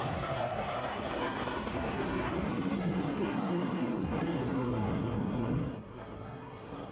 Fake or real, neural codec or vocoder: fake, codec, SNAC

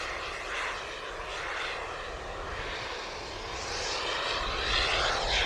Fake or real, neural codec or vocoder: real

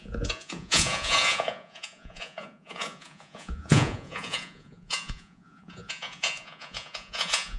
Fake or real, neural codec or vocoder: fake, vocoder, Vocos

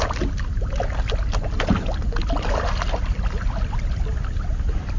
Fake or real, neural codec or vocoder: real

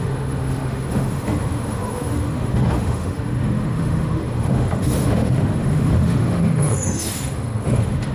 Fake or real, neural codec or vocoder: fake, autoencoder, DAC-VAE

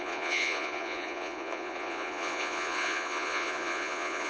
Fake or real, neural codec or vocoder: fake, vocoder, Vocos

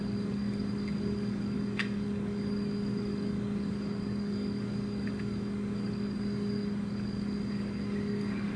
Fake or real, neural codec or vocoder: fake, codec, DAC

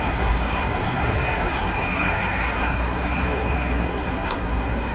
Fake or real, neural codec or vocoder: fake, codec, SNAC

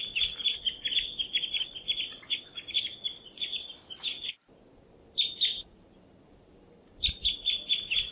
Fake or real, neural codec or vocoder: real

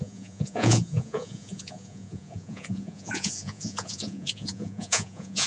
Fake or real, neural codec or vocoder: fake, vocoder, Vocos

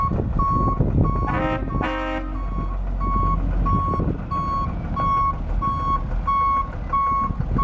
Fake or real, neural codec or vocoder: real